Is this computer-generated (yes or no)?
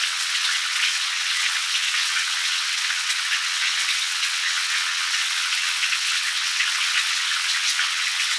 yes